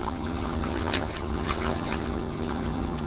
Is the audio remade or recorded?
remade